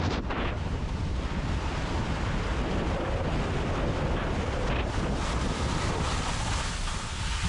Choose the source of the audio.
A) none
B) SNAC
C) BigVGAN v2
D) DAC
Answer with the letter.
A